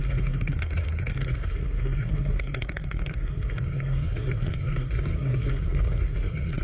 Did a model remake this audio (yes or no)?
yes